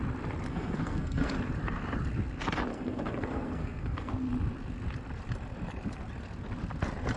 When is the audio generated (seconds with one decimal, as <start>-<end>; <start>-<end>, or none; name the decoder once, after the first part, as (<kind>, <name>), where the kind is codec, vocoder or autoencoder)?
0.5-1.3 (codec, SNAC); 2.7-4.1